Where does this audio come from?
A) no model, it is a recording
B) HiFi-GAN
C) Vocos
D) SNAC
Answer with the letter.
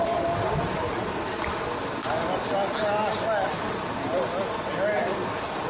A